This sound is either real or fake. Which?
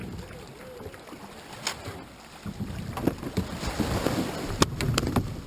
real